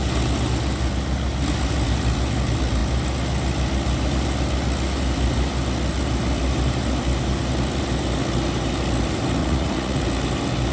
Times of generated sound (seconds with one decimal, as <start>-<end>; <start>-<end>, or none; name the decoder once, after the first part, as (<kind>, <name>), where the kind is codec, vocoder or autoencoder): 9.4-10.0 (vocoder, Vocos)